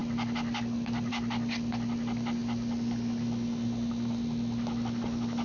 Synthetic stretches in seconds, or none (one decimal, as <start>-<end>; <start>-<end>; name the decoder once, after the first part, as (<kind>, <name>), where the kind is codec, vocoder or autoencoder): none